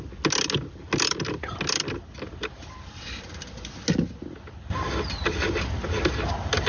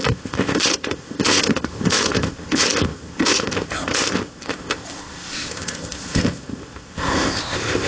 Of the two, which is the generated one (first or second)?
second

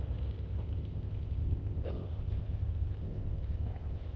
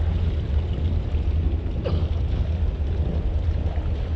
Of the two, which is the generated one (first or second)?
first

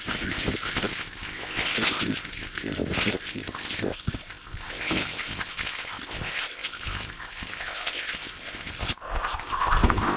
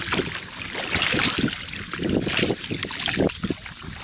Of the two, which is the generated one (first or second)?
first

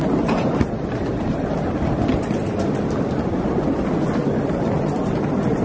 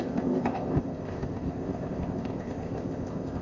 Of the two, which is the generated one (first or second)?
second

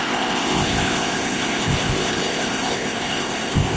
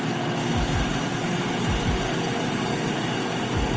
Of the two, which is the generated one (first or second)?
first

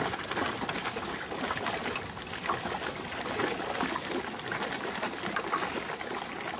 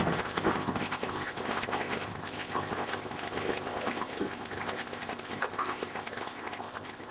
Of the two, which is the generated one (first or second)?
second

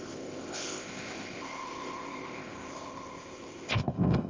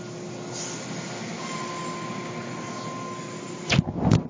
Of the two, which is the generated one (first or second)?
first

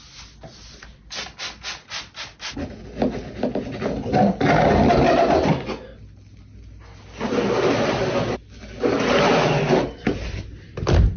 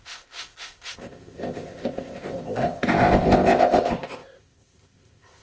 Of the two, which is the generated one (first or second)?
second